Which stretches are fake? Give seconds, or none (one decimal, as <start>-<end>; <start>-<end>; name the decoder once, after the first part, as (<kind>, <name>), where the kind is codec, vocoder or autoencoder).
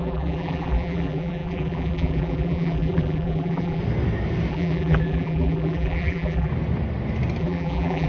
0.0-3.8 (vocoder, BigVGAN v2); 4.5-6.5; 7.4-8.1